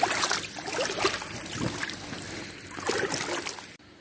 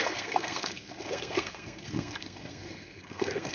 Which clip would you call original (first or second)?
first